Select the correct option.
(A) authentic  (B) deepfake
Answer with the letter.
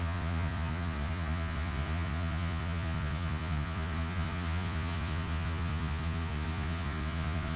B